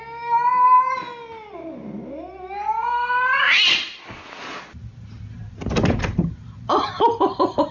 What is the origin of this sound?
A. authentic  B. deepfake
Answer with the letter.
A